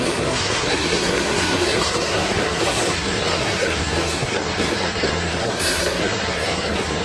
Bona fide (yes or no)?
no